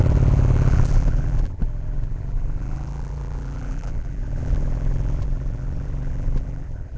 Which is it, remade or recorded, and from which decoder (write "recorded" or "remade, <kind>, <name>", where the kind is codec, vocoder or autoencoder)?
remade, vocoder, BigVGAN v2